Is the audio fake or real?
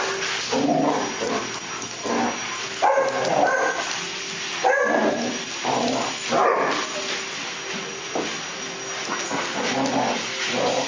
real